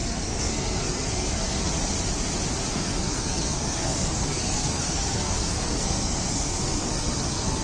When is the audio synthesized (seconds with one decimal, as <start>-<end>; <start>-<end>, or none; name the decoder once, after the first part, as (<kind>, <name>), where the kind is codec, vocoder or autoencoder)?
0.0-1.7 (codec, SNAC); 2.7-7.6